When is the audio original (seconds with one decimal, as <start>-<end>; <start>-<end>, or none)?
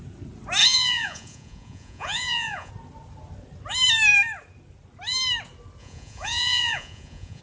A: 0.0-0.6; 2.7-5.8